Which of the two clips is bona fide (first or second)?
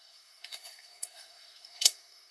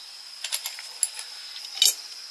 second